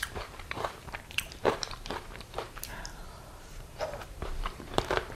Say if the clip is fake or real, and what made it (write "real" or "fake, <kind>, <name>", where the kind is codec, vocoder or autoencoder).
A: fake, vocoder, BigVGAN v2